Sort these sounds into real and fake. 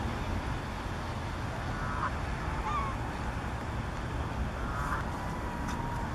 real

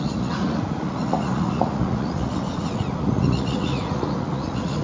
fake